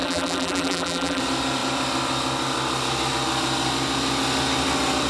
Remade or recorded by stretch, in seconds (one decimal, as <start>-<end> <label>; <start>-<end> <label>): 0.0-1.2 remade; 1.2-5.1 recorded